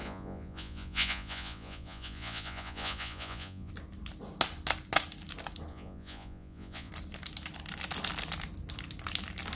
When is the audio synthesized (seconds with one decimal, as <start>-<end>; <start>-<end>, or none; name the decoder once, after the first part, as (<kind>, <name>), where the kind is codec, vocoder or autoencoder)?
0.0-3.7 (vocoder, Vocos); 5.7-6.9